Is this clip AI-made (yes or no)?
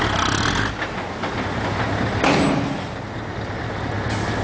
no